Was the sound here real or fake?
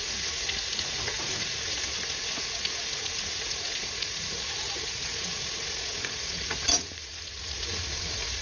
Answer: fake